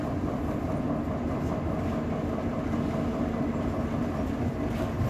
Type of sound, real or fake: real